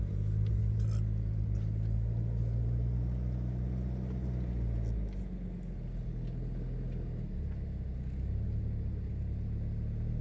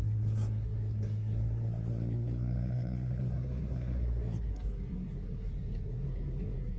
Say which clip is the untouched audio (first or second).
first